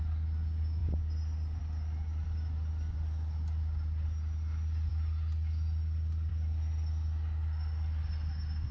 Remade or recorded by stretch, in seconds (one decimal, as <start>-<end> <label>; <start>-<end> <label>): 0.0-8.7 recorded